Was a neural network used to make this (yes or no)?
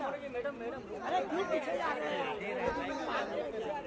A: no